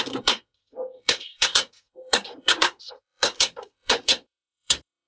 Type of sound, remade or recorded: remade